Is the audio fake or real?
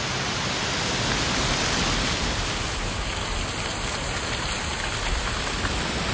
real